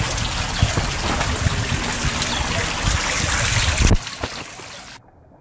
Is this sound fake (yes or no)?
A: no